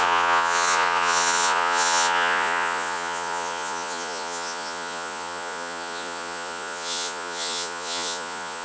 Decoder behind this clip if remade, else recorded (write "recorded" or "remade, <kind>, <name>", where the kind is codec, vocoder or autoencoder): remade, vocoder, Vocos